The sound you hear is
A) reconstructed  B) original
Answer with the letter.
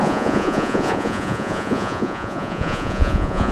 A